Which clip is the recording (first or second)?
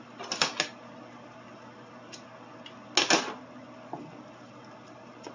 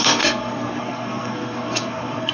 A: first